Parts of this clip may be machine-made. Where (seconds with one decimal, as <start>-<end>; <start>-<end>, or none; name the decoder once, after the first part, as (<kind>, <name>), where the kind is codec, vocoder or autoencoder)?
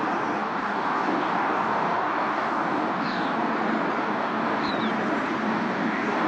0.4-3.5 (codec, DAC); 4.0-4.7; 5.4-6.3